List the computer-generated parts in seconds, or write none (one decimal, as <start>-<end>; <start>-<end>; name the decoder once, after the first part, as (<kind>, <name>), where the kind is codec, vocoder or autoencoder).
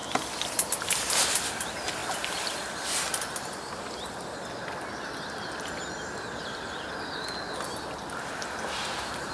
none